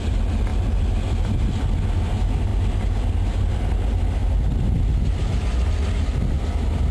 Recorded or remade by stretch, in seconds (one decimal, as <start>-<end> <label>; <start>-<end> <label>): 0.0-6.9 recorded